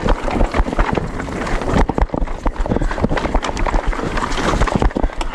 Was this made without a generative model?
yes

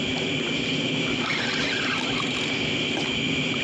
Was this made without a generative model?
yes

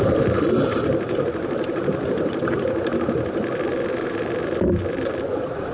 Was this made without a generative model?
no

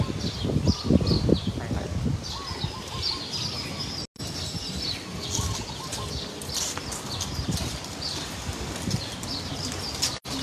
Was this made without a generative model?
yes